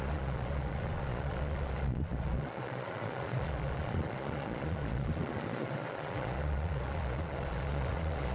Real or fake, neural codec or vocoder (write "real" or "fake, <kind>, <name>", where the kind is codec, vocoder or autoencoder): fake, vocoder, Vocos